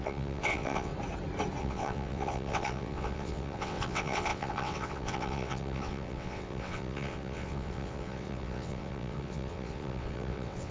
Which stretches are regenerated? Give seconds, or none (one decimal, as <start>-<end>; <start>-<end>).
0.0-0.9; 1.6-10.7